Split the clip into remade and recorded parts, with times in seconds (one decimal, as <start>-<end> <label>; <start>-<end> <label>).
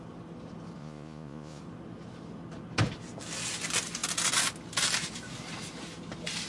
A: 0.0-0.8 recorded; 0.8-1.6 remade; 1.6-6.5 recorded